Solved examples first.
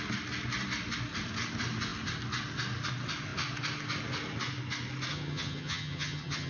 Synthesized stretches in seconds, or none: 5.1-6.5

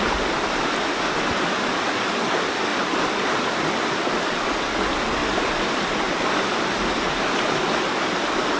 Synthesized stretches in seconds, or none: none

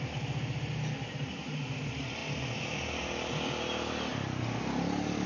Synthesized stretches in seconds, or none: none